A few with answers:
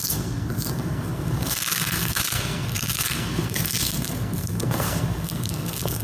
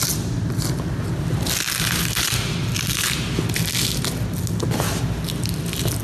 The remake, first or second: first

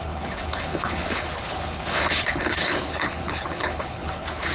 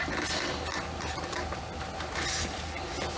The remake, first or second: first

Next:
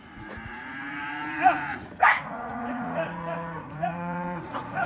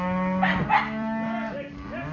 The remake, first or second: first